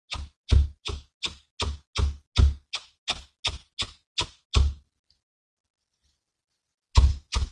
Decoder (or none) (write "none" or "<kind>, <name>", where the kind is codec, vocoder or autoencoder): none